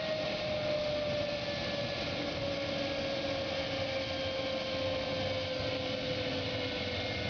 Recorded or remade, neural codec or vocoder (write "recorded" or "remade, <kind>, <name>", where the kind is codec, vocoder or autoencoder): recorded